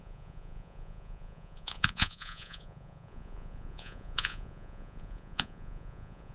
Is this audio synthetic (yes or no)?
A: yes